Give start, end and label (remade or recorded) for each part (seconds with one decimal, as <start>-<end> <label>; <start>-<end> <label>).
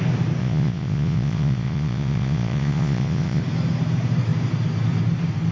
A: 0.0-0.4 recorded; 0.4-3.4 remade; 3.4-5.5 recorded